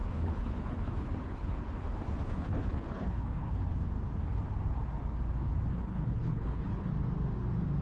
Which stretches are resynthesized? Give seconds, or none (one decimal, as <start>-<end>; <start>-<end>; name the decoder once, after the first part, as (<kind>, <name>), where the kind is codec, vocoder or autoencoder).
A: 0.0-3.6 (codec, HILCodec); 5.7-6.9